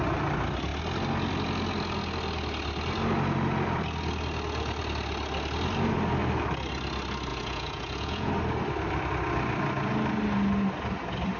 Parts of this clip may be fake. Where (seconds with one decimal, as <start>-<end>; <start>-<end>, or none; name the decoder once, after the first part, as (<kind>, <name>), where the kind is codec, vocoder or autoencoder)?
7.3-8.3 (vocoder, Vocos)